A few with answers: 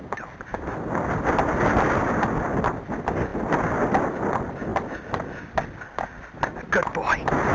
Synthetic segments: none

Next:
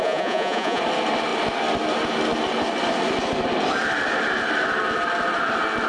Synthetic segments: 0.0-0.8